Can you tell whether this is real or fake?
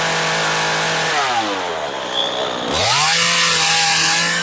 real